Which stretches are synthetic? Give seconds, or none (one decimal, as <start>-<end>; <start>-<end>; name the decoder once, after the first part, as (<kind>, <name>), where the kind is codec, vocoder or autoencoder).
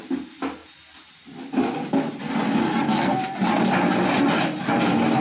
2.7-3.2 (codec, SNAC)